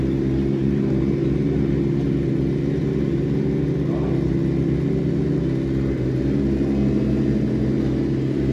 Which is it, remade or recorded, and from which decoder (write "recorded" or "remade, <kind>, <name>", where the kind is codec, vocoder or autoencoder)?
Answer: recorded